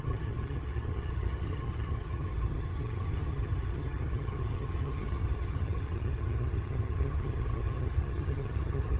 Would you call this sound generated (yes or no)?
yes